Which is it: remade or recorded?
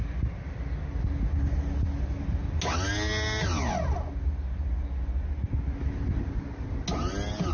recorded